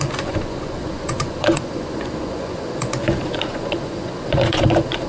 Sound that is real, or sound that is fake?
fake